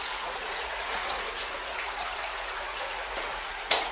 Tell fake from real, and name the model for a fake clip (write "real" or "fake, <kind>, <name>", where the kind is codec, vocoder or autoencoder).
fake, vocoder, Vocos